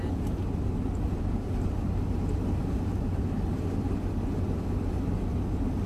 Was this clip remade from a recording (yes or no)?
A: no